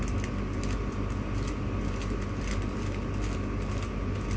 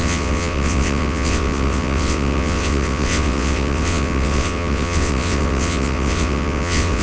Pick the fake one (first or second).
second